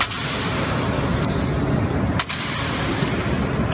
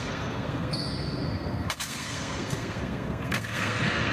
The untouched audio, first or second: first